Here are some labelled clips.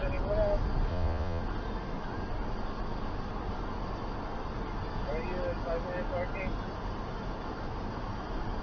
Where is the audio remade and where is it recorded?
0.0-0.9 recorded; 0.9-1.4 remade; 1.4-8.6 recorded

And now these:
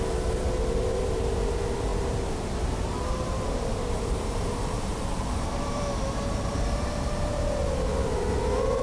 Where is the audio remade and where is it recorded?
0.0-7.6 remade; 7.6-8.3 recorded; 8.3-8.8 remade